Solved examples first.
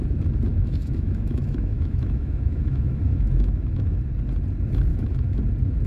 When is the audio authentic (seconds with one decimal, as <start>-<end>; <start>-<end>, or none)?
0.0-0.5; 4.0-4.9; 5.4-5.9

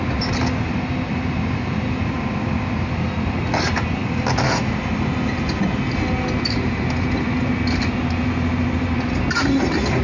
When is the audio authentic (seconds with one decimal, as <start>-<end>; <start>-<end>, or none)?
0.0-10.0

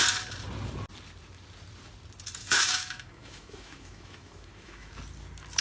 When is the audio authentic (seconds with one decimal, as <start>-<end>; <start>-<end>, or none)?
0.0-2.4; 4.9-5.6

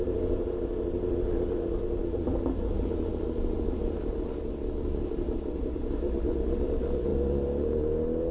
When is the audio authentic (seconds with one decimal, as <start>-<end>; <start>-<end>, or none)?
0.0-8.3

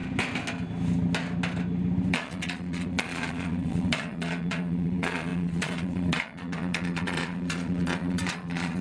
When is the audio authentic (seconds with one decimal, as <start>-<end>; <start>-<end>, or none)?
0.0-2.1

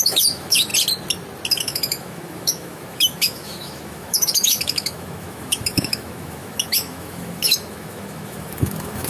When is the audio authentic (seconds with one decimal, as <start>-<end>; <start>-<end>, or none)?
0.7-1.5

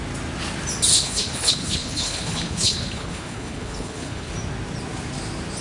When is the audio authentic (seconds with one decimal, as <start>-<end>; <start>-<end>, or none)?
0.0-0.9; 4.3-5.6

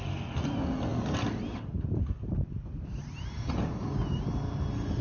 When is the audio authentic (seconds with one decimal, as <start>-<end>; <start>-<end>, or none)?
0.0-5.0